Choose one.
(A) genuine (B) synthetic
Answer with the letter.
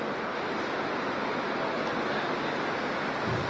A